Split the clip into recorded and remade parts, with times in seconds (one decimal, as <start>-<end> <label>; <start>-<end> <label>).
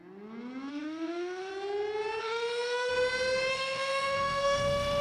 0.0-0.7 recorded; 0.7-1.5 remade; 1.5-2.2 recorded; 2.2-2.9 remade; 2.9-3.5 recorded; 3.5-5.0 remade